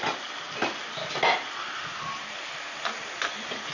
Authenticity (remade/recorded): recorded